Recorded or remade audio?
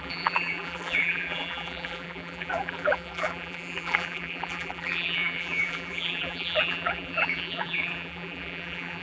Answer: remade